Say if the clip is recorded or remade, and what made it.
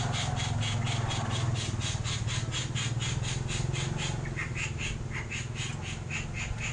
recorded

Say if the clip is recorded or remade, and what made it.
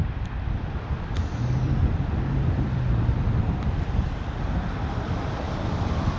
recorded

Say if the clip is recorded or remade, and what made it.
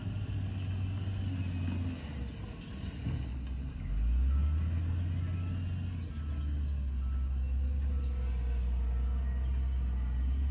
recorded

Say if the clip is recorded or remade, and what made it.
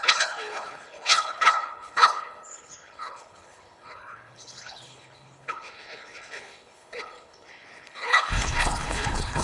remade, codec, HILCodec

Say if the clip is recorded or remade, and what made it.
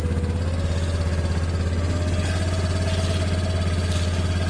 recorded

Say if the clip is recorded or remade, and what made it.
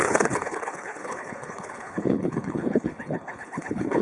remade, codec, HILCodec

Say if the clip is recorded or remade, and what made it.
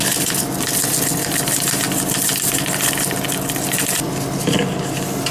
recorded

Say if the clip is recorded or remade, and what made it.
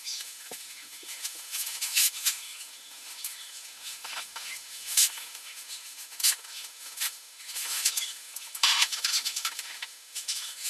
remade, autoencoder, DAC-VAE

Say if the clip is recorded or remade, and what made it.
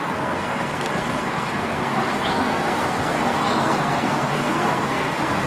remade, codec, SNAC